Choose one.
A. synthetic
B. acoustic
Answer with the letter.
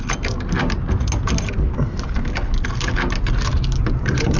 B